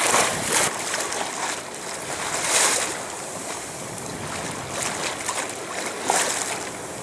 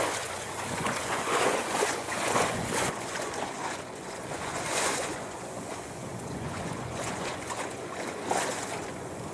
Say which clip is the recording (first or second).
first